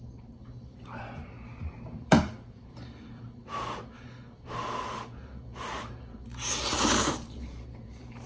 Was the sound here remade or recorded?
remade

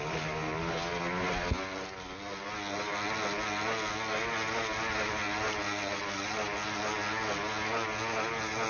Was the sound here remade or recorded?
recorded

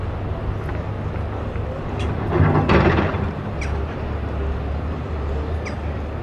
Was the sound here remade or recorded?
recorded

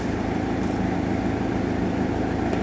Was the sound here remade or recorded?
remade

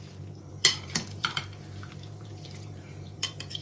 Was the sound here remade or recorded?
remade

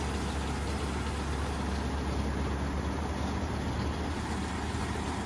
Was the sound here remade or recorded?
recorded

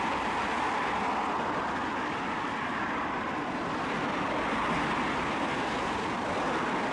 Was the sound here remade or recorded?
recorded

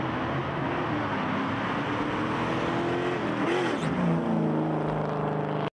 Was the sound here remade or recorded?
recorded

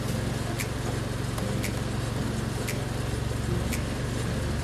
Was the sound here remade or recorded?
recorded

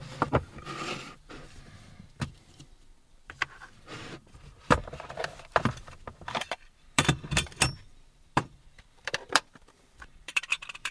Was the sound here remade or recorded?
remade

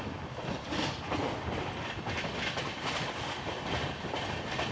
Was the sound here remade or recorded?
remade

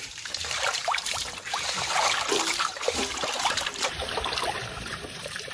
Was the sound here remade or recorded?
remade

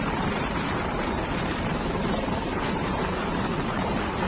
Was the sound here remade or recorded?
remade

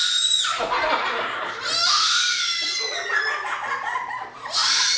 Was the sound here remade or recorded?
recorded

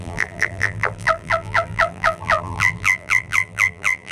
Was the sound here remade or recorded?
remade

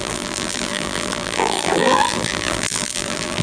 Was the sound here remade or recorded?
remade